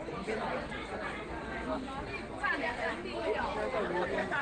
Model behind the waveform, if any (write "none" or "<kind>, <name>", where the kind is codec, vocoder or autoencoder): none